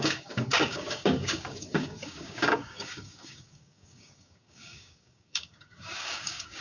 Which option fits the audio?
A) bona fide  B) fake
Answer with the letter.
B